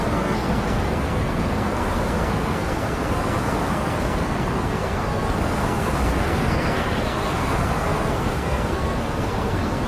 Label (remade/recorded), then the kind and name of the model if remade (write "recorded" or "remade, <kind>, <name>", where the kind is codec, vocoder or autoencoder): remade, codec, SNAC